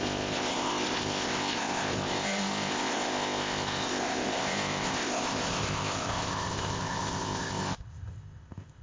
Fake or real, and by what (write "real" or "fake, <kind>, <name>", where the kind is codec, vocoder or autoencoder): fake, codec, ZipCodec